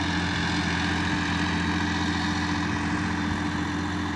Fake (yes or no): no